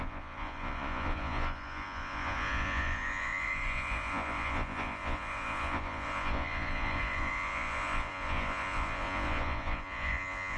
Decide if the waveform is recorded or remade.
remade